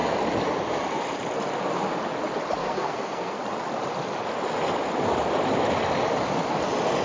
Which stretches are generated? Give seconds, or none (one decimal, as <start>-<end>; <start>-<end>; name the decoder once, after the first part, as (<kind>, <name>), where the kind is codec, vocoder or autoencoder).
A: 2.6-3.4 (codec, SNAC)